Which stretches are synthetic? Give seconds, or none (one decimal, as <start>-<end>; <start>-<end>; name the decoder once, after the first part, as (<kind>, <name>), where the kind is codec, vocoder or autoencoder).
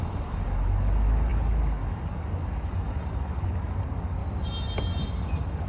0.0-4.2 (codec, DAC); 5.1-5.7